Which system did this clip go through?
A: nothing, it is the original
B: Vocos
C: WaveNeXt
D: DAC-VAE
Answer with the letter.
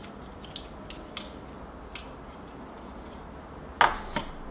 A